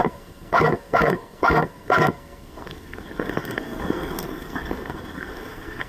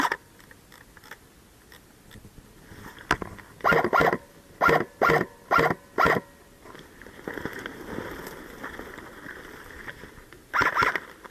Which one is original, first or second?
second